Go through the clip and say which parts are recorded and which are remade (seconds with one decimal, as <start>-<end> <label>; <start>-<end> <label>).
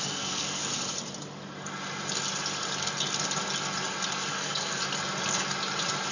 0.0-0.6 remade; 0.6-4.3 recorded; 4.3-4.8 remade; 4.8-6.1 recorded